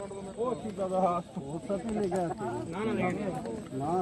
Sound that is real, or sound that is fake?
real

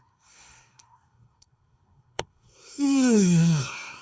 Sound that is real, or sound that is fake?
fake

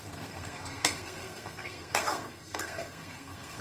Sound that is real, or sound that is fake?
fake